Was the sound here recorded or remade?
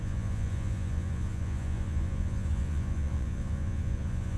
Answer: remade